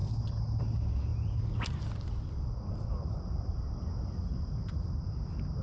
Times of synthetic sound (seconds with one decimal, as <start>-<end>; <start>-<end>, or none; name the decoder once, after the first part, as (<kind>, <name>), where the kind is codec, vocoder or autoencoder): none

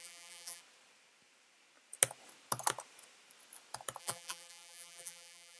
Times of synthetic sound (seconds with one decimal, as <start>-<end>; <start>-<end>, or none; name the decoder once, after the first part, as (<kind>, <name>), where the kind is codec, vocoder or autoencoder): 0.0-0.6 (vocoder, BigVGAN v2); 4.0-5.6